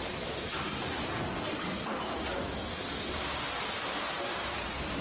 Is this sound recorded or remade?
recorded